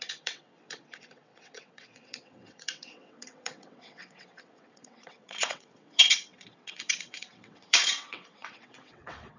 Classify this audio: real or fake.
fake